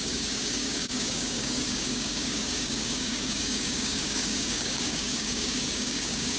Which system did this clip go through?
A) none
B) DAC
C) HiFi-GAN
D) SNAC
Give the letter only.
B